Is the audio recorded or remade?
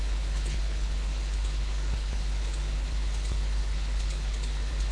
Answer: remade